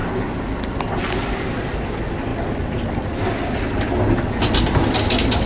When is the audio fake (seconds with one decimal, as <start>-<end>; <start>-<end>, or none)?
none